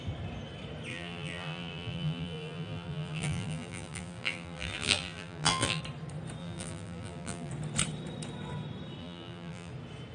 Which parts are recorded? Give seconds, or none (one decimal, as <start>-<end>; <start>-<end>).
0.0-0.9; 5.8-6.4; 7.5-9.0; 9.7-10.1